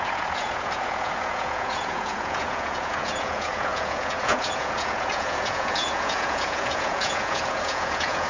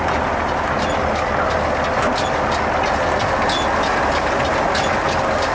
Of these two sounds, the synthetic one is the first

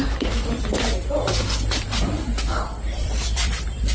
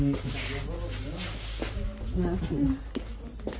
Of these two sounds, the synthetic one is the first